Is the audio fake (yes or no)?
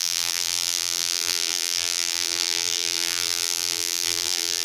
yes